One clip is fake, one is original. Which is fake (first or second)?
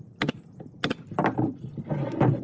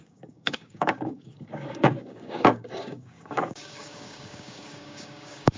second